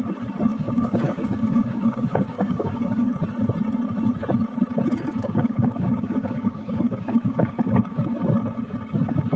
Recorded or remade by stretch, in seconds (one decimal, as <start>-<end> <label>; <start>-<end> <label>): 0.0-0.5 recorded; 0.5-3.1 remade; 3.1-5.1 recorded; 5.1-8.0 remade; 8.0-9.4 recorded